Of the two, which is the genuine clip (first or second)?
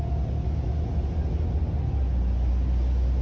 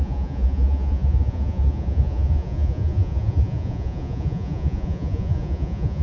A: first